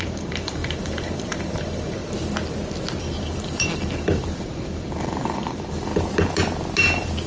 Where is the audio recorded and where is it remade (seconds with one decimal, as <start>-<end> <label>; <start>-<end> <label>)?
0.0-2.0 remade; 2.0-3.0 recorded; 3.0-5.9 remade; 5.9-7.3 recorded